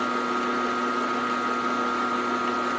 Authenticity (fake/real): real